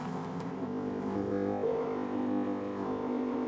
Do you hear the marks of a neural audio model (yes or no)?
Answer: yes